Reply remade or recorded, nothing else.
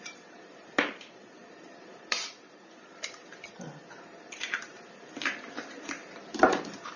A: remade